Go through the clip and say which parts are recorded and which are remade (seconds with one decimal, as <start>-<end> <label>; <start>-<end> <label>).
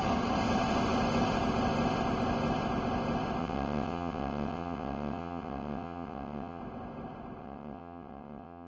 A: 0.0-3.4 recorded; 3.4-6.6 remade; 6.6-7.4 recorded; 7.4-8.7 remade